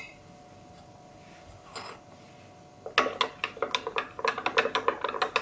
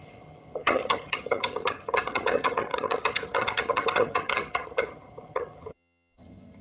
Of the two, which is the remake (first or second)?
second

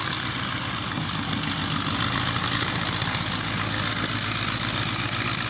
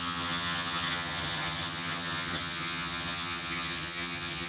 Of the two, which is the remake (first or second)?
second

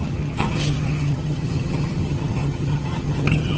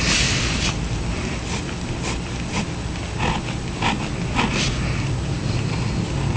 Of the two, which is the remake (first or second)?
first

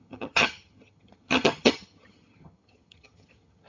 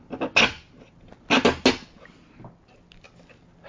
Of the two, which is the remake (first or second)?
first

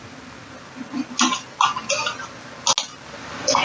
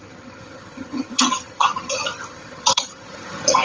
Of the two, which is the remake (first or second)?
second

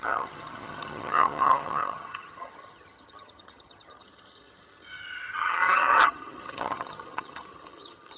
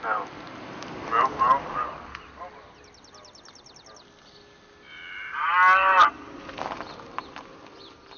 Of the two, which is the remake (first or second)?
first